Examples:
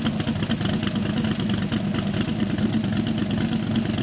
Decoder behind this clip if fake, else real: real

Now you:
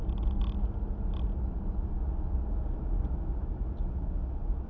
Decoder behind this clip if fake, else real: real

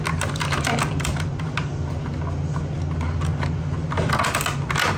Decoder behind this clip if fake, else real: real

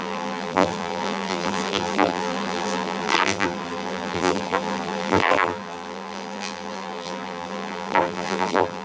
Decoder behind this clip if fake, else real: fake, vocoder, BigVGAN v2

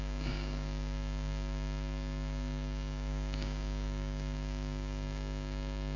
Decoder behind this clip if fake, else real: fake, codec, DAC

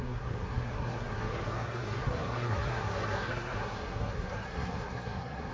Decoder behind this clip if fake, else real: fake, codec, SNAC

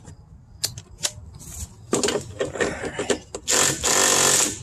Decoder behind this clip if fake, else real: real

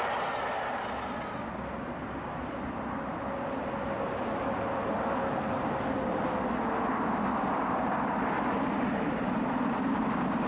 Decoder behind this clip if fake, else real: real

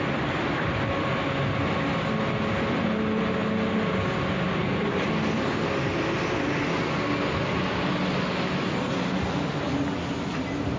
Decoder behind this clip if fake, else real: real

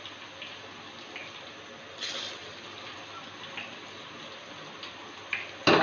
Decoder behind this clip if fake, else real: real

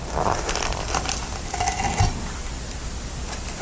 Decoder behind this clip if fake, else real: fake, vocoder, BigVGAN v2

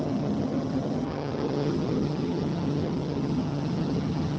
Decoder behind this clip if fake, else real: fake, vocoder, HiFi-GAN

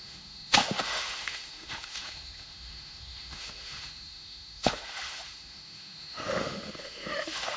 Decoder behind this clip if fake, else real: fake, autoencoder, DAC-VAE